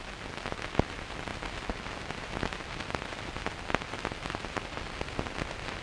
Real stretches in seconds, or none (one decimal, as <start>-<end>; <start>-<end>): 0.0-5.8